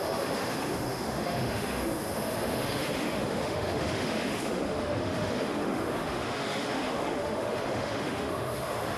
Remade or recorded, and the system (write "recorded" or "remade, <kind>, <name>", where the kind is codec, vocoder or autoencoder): remade, autoencoder, DAC-VAE